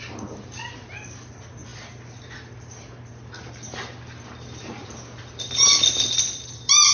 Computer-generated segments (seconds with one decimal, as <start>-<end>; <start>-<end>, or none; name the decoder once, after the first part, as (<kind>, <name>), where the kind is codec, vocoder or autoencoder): none